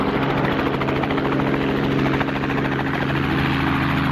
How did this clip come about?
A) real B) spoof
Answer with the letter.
A